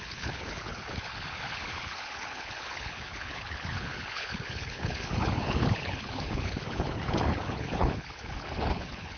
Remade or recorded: remade